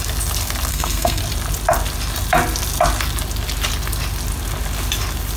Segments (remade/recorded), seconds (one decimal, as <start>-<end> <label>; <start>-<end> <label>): 0.0-0.7 recorded; 0.7-1.2 remade; 1.2-5.4 recorded